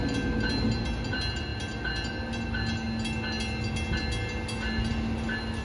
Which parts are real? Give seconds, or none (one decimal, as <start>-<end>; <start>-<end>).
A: 0.0-5.6